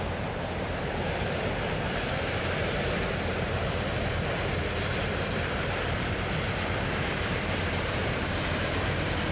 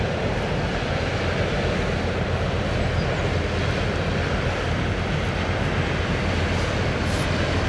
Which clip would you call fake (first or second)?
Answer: first